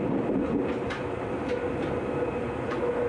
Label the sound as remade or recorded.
recorded